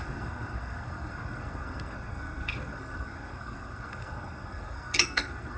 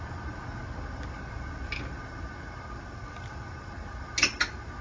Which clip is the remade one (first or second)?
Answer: first